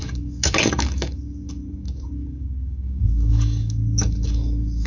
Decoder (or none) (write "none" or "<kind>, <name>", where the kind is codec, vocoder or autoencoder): codec, DAC